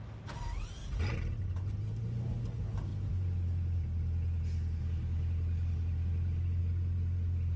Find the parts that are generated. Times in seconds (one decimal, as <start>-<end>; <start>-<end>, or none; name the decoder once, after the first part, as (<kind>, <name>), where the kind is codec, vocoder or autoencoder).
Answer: none